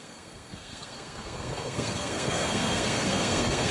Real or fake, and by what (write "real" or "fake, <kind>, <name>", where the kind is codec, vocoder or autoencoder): fake, codec, SNAC